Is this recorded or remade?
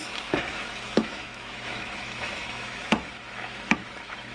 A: remade